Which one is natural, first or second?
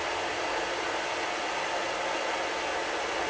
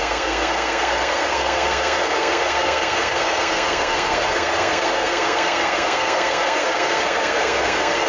first